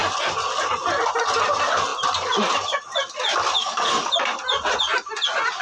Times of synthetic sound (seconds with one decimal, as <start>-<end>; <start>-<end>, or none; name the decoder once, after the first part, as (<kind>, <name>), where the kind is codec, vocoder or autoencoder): 3.6-4.1 (codec, DAC)